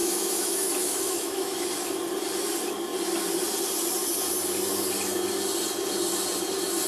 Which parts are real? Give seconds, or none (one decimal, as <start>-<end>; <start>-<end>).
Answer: 1.7-6.9